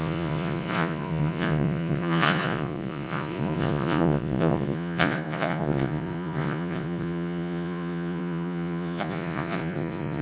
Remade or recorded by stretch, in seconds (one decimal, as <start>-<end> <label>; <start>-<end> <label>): 0.0-10.2 remade